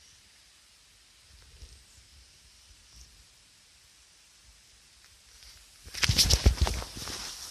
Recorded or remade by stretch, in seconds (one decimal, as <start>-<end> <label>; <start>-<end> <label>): 0.0-7.5 recorded